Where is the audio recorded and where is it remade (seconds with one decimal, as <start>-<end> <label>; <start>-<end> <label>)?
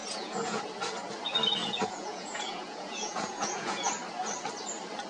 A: 0.0-0.6 remade; 0.6-1.6 recorded; 1.6-3.9 remade; 3.9-5.1 recorded